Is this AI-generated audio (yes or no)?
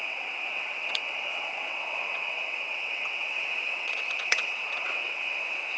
yes